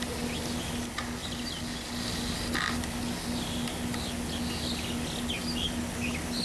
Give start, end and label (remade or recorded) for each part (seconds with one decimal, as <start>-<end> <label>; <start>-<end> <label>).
0.0-6.4 recorded